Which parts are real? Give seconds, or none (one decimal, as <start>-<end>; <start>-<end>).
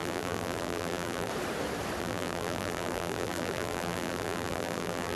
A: 1.3-2.0